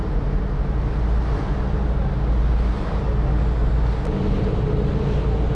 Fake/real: real